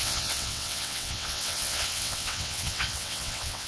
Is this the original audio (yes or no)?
no